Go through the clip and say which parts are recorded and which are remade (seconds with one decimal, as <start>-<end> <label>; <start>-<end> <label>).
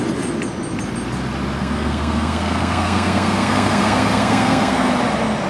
0.0-1.6 recorded; 1.6-4.9 remade; 4.9-5.5 recorded